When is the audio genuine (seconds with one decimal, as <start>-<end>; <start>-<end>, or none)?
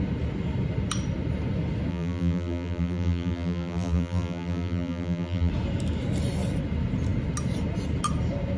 0.0-1.9; 5.5-8.6